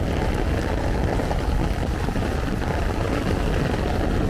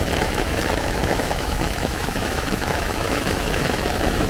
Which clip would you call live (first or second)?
first